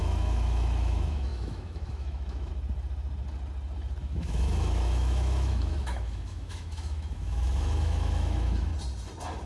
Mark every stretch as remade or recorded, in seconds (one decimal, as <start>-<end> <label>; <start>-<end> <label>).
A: 0.0-2.5 remade; 2.5-4.0 recorded; 4.0-8.7 remade; 8.7-9.5 recorded